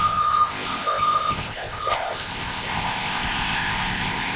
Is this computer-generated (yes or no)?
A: yes